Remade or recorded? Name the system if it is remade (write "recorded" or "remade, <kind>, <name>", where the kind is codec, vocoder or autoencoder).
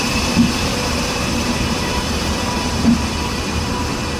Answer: remade, vocoder, BigVGAN v2